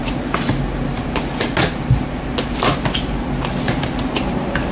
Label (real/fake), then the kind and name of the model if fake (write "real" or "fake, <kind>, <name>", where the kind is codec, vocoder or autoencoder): real